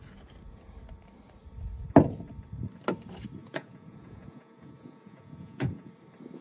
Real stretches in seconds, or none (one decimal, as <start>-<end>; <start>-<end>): 0.0-3.4; 5.9-6.4